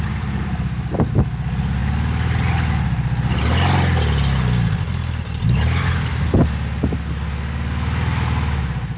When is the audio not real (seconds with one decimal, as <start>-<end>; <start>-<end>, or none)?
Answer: none